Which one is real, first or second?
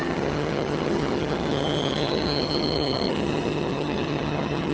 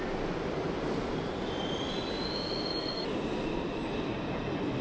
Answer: second